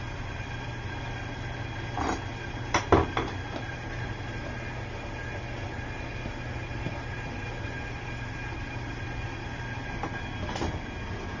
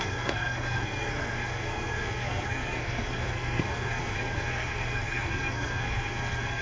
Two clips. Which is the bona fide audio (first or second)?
first